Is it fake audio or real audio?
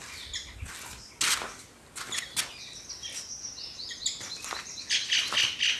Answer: real